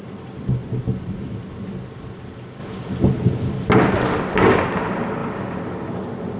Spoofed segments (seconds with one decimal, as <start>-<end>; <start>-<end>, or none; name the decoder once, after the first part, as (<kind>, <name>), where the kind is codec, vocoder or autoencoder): none